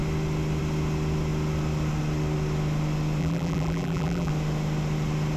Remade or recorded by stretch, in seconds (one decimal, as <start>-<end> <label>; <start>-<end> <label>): 0.0-3.2 recorded; 3.2-4.3 remade; 4.3-5.4 recorded